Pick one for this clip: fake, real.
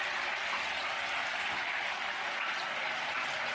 real